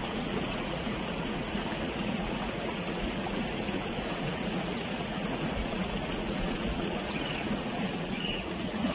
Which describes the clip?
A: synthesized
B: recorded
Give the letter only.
A